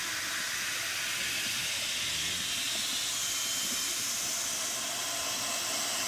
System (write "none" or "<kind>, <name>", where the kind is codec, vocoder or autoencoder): none